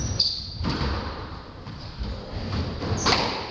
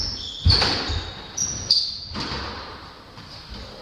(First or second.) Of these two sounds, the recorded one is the second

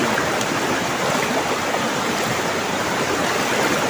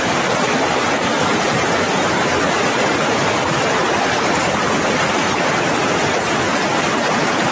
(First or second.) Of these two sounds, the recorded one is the first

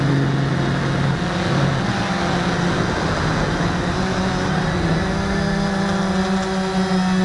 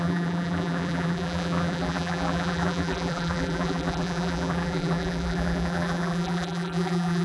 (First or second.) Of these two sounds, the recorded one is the first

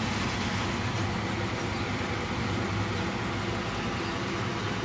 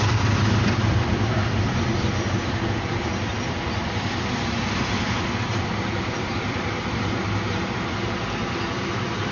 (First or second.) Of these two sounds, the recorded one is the first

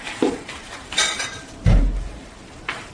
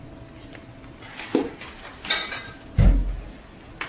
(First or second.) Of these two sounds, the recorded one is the second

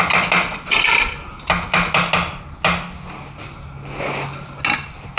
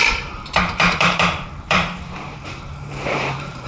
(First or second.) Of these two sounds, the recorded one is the first